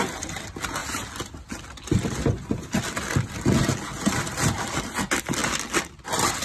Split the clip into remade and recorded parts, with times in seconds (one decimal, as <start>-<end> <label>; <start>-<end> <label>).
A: 0.0-6.4 recorded